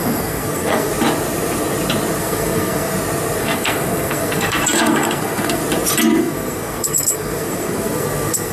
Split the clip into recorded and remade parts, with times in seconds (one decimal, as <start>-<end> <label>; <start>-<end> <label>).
0.0-0.9 remade; 0.9-2.2 recorded; 2.2-2.9 remade; 2.9-3.4 recorded; 3.4-5.6 remade; 5.6-6.2 recorded; 6.2-8.5 remade

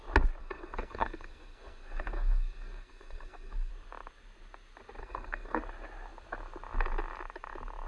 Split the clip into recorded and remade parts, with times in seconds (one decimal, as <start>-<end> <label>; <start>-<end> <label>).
0.0-0.4 recorded; 0.4-3.7 remade; 3.7-5.0 recorded; 5.0-5.6 remade; 5.6-7.9 recorded

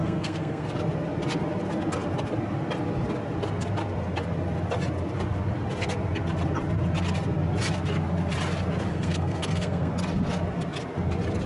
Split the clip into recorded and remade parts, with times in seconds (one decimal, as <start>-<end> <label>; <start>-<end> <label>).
0.0-0.7 remade; 0.7-8.9 recorded; 8.9-9.9 remade; 9.9-11.5 recorded

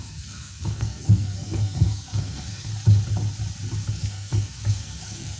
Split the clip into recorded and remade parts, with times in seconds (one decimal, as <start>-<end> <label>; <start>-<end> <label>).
0.0-2.7 remade; 2.7-3.9 recorded; 3.9-5.4 remade